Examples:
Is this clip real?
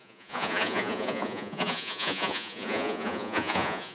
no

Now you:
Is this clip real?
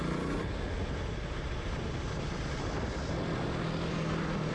yes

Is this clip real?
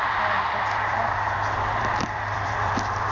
no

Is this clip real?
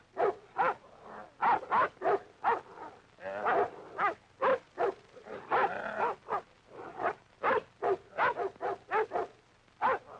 yes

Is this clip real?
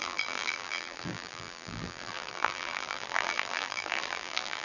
no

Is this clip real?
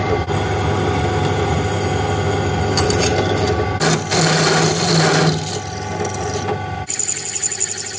yes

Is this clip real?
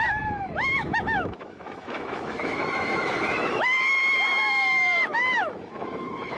no